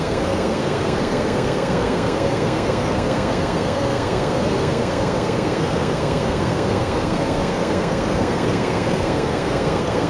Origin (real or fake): fake